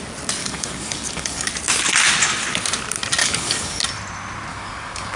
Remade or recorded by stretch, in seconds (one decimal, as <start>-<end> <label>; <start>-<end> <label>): 0.0-0.4 recorded; 0.4-1.5 remade; 1.5-3.2 recorded; 3.2-3.8 remade; 3.8-4.5 recorded; 4.5-5.2 remade